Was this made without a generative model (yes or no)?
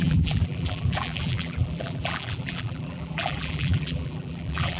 no